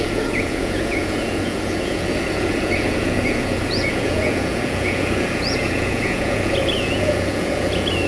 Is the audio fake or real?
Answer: fake